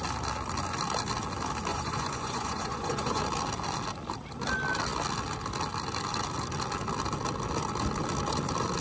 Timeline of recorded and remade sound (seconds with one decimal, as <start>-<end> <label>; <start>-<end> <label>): 0.0-1.7 recorded; 1.7-3.2 remade; 3.2-8.8 recorded